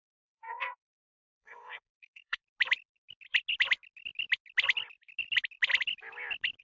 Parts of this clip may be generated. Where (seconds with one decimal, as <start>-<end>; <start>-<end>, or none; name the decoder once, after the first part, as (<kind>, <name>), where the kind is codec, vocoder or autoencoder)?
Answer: 0.0-2.4 (codec, SNAC)